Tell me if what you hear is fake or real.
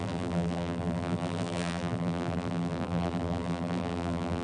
fake